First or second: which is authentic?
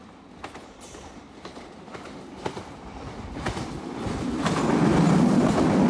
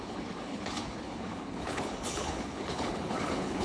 first